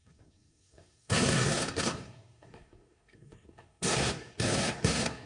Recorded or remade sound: remade